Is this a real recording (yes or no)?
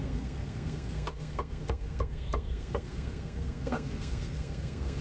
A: no